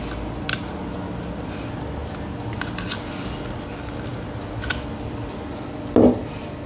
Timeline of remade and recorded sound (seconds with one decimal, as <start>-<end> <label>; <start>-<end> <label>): 0.0-6.7 recorded